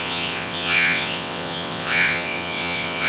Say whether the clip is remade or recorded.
remade